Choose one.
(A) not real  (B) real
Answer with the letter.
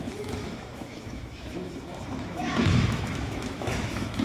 A